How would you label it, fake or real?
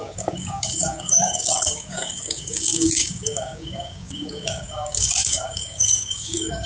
fake